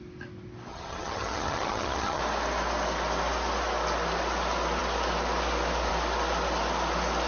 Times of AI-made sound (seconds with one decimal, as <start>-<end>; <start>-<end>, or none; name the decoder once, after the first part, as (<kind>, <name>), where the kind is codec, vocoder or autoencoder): 0.7-2.2 (vocoder, HiFi-GAN)